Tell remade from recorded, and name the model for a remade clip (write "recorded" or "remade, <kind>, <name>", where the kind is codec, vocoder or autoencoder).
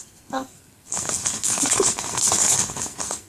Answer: remade, codec, SNAC